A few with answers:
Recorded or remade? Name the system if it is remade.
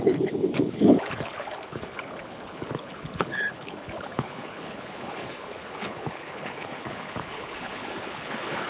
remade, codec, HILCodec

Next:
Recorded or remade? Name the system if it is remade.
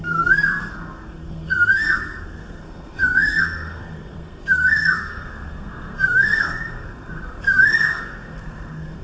remade, codec, SNAC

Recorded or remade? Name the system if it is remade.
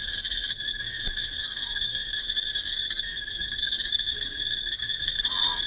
remade, codec, SNAC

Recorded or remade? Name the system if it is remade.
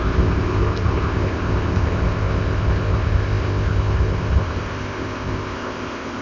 remade, codec, ZipCodec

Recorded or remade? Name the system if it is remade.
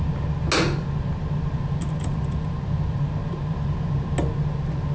recorded